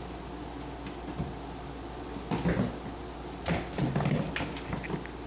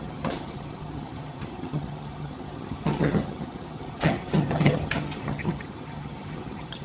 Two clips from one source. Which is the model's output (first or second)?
second